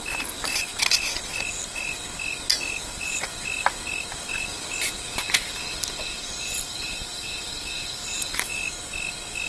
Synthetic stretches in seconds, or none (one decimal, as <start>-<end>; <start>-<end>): 0.0-0.7; 2.8-3.3; 6.6-8.6